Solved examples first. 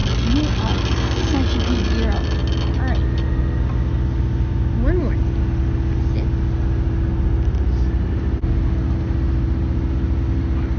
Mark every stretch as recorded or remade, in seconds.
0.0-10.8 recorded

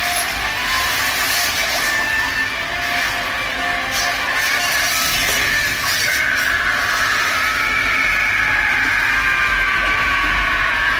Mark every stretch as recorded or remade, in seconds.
0.0-10.0 recorded; 10.0-11.0 remade

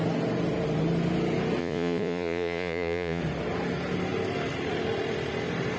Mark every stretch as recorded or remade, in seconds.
0.0-1.6 recorded; 1.6-3.2 remade; 3.2-5.8 recorded